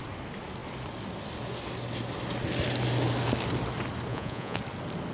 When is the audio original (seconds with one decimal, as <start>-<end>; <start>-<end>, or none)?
0.0-4.1; 4.6-5.1